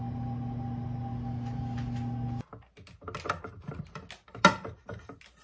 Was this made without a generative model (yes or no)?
yes